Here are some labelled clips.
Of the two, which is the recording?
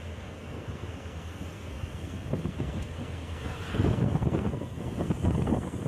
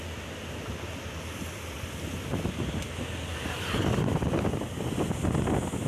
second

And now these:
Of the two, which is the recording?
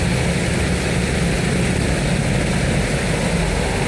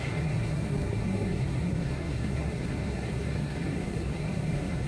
first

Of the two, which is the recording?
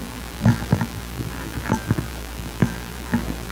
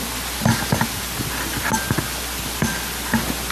second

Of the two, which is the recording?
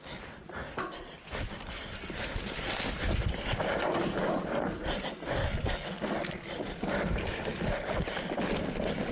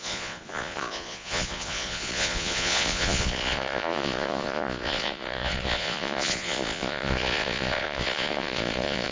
first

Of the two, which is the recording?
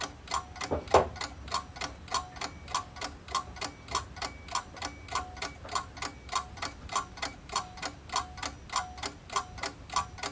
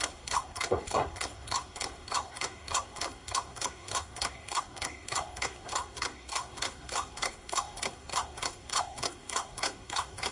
first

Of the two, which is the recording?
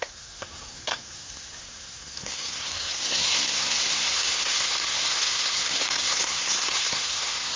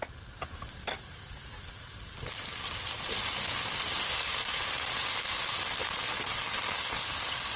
second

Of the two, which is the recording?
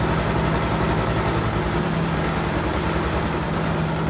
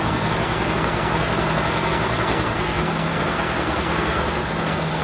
first